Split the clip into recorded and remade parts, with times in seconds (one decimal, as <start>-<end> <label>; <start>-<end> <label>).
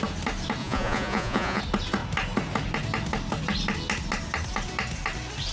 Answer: 0.0-0.6 recorded; 0.6-1.6 remade; 1.6-5.5 recorded